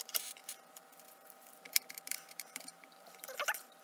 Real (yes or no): no